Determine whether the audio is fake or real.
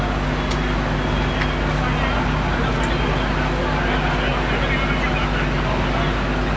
real